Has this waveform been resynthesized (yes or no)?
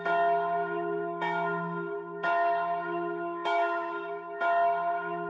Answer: yes